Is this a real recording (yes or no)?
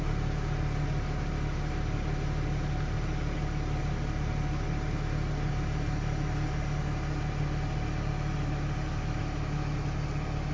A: yes